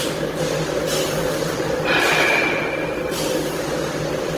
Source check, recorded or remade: recorded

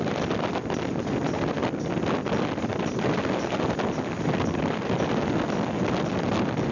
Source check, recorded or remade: recorded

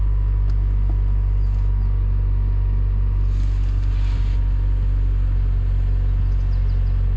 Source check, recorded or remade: recorded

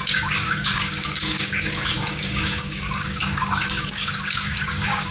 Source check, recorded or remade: remade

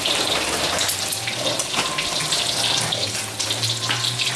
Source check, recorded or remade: recorded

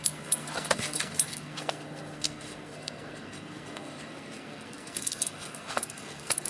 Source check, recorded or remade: remade